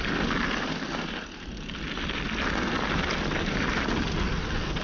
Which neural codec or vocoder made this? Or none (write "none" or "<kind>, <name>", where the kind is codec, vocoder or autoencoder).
none